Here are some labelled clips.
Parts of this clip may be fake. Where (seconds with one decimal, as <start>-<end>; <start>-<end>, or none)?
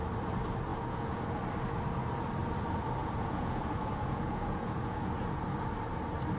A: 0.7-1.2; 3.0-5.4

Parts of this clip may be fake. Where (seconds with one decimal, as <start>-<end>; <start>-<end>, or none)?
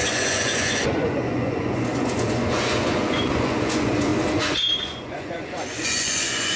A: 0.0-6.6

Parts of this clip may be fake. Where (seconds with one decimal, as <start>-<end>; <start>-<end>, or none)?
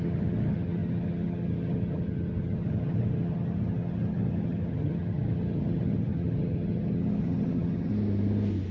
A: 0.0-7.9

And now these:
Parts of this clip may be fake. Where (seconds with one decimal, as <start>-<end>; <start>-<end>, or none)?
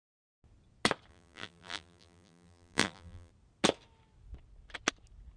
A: 1.1-3.3